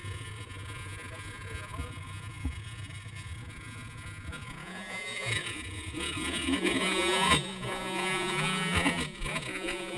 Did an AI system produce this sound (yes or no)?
yes